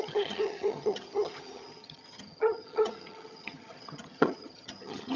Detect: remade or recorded remade